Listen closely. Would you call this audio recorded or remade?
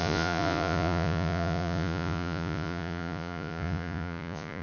remade